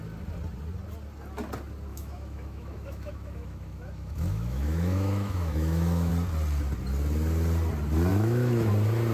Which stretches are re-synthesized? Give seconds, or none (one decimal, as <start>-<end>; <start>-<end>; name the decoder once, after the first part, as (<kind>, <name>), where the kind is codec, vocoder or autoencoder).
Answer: 1.9-6.1 (autoencoder, DAC-VAE); 8.1-8.7